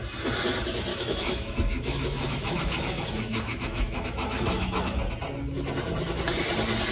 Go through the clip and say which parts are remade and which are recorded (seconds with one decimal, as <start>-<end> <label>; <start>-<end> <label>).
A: 0.0-0.9 recorded; 0.9-5.0 remade; 5.0-6.9 recorded